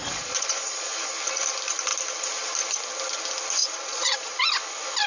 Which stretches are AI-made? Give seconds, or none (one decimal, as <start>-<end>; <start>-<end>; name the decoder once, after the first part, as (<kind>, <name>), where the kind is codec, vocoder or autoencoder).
0.0-0.9 (vocoder, Vocos); 3.6-4.4